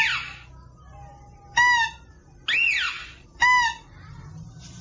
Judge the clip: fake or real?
real